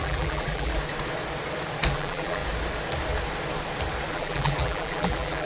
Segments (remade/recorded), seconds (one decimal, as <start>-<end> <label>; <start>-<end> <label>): 0.0-0.7 remade; 0.7-1.9 recorded; 1.9-2.4 remade; 2.4-4.1 recorded; 4.1-5.5 remade